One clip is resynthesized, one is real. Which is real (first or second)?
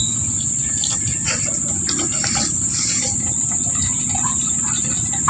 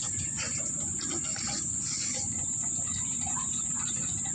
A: first